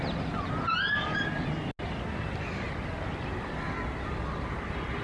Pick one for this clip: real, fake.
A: real